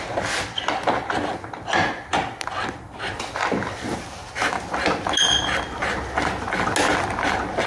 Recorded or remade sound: recorded